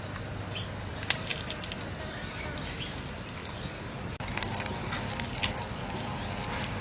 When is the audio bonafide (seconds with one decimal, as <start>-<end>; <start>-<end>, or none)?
0.0-6.8